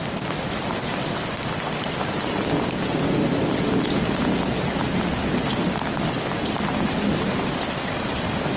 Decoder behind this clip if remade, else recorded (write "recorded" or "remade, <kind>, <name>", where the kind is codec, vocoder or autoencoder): recorded